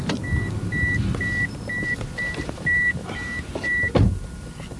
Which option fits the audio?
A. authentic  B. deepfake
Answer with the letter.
A